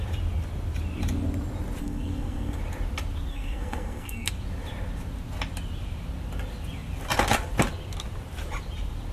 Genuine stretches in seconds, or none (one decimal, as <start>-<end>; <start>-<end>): 0.0-1.8; 2.6-3.3; 4.3-9.1